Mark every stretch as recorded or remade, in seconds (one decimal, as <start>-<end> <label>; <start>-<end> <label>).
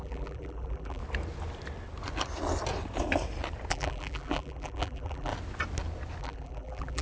0.0-1.0 remade; 1.0-3.7 recorded; 3.7-5.3 remade; 5.3-6.2 recorded; 6.2-7.0 remade